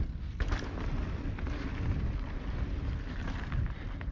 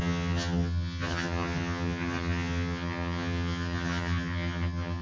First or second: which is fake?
second